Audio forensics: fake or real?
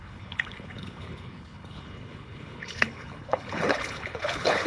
fake